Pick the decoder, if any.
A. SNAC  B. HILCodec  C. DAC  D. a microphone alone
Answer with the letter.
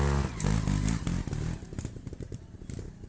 D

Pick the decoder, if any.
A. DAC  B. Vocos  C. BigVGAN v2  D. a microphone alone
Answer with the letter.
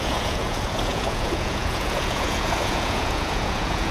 B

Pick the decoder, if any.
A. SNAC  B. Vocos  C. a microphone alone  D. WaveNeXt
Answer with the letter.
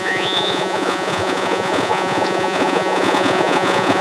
B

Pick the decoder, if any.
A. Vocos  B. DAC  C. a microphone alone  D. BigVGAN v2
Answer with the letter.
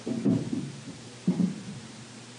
C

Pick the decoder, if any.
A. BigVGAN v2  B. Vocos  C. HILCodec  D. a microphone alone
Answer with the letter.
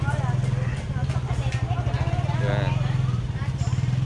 D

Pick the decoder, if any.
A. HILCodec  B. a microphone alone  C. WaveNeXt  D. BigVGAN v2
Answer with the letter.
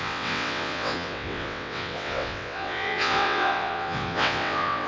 C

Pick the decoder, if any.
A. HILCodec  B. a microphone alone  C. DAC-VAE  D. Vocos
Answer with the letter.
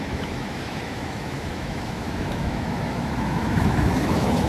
C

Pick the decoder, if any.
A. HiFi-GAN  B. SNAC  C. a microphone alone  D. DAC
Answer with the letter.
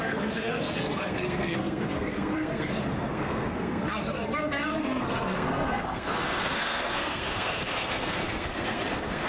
B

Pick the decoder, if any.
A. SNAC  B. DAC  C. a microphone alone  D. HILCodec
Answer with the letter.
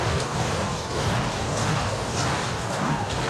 B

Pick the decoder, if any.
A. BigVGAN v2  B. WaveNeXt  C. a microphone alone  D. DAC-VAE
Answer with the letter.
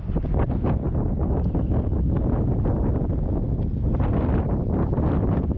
C